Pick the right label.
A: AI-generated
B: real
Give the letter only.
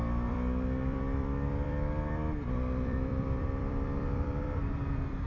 A